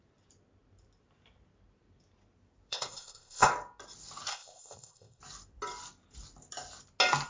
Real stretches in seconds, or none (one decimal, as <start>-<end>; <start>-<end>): 0.0-2.7; 3.5-4.3; 5.2-7.3